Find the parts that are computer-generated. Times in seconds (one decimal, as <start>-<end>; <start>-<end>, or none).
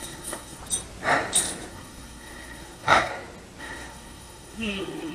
0.0-0.6; 1.7-3.1; 3.6-5.1